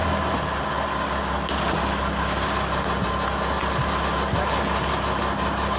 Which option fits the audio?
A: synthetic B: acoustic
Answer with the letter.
B